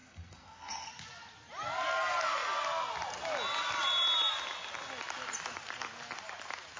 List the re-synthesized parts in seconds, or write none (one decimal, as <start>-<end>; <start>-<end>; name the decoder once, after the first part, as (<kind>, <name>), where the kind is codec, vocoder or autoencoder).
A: 0.0-0.9 (codec, SNAC)